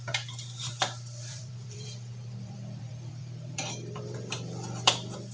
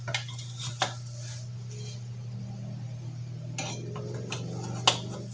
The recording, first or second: second